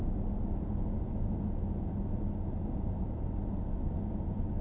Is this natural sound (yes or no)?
yes